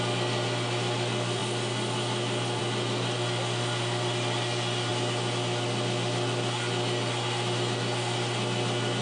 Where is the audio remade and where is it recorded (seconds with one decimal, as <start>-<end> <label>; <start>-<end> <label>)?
0.0-9.0 recorded